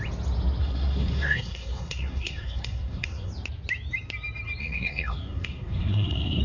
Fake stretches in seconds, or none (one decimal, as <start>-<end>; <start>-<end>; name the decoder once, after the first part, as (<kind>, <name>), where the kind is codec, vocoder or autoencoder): 0.6-3.3 (codec, SNAC); 4.6-6.4